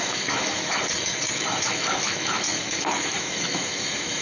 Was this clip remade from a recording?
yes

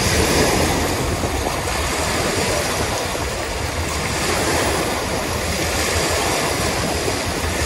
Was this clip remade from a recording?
no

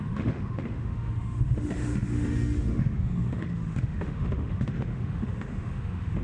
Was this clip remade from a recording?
yes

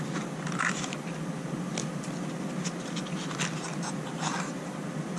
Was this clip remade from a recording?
no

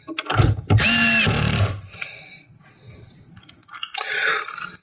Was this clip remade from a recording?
no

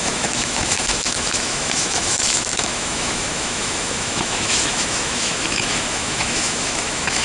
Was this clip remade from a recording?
yes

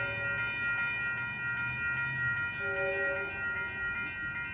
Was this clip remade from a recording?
no